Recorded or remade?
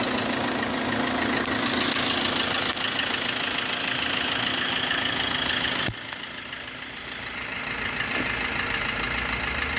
recorded